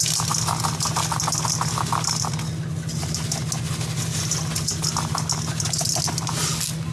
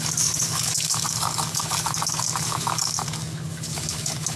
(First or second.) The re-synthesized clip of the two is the second